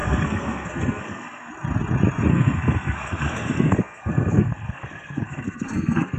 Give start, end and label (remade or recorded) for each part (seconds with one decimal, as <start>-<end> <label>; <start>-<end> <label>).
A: 0.0-1.5 remade; 1.5-2.3 recorded; 2.3-6.2 remade